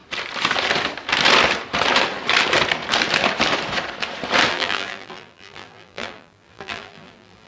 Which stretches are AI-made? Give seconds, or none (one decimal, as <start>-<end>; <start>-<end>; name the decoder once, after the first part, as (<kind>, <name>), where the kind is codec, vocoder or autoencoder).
4.5-7.5 (vocoder, BigVGAN v2)